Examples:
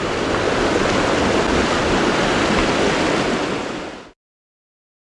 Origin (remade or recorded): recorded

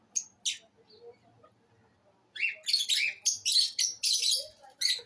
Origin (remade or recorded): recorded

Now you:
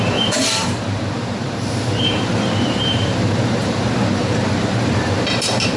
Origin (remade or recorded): remade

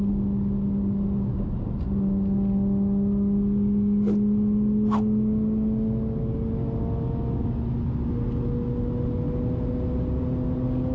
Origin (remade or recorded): recorded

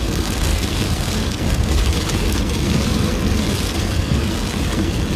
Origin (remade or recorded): remade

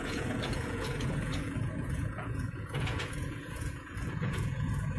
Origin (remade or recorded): remade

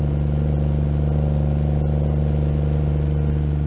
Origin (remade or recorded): recorded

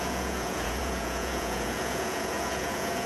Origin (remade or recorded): remade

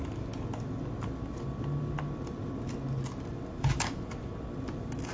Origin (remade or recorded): recorded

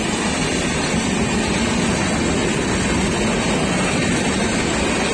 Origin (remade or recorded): recorded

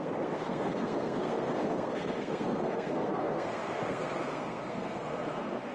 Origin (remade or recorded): remade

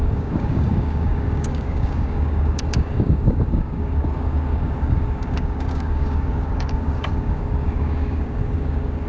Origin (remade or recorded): remade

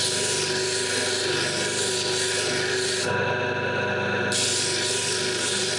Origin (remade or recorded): recorded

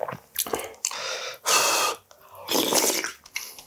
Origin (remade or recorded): recorded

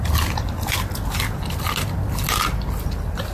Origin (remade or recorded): recorded